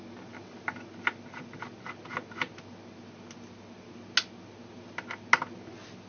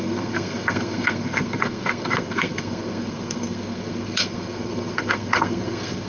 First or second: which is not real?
second